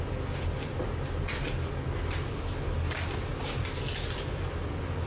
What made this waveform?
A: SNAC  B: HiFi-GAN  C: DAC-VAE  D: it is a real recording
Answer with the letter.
D